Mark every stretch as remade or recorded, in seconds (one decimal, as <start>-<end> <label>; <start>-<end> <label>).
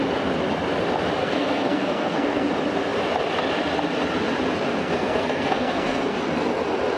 0.0-1.2 recorded; 1.2-2.5 remade; 2.5-4.8 recorded; 4.8-6.2 remade; 6.2-7.0 recorded